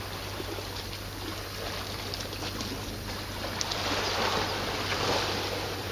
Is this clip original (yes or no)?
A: yes